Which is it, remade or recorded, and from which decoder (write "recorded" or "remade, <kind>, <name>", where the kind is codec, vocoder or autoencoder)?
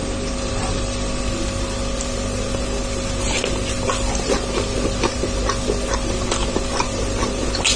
recorded